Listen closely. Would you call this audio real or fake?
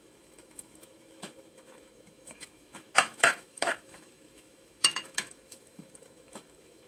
fake